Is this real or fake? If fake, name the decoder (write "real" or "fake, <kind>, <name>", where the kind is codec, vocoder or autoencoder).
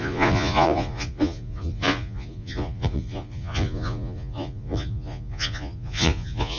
fake, vocoder, Vocos